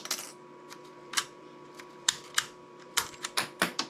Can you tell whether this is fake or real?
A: fake